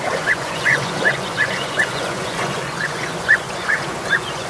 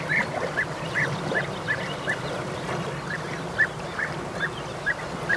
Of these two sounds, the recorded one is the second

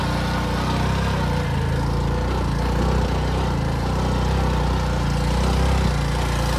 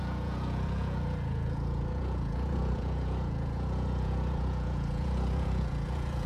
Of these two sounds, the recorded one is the first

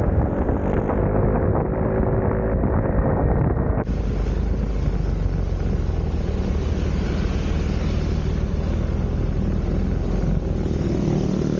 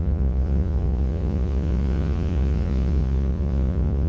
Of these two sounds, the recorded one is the first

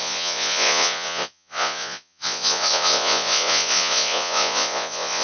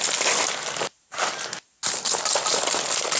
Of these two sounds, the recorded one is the second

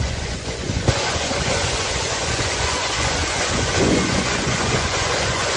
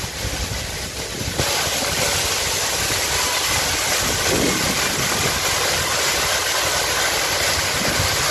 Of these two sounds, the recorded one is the second